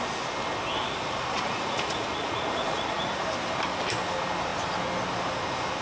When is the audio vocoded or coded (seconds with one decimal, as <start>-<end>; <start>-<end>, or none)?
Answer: 0.8-3.2